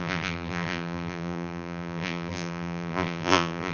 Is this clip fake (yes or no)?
yes